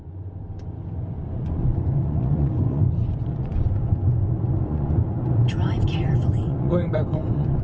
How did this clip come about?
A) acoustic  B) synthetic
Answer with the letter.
B